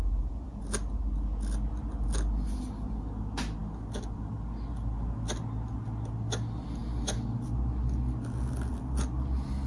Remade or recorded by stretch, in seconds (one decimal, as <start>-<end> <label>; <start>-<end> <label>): 0.0-0.6 remade; 0.6-9.7 recorded